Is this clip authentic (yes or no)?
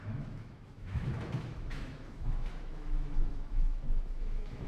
no